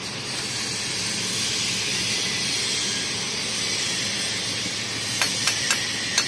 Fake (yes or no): no